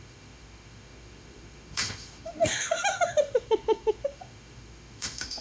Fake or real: fake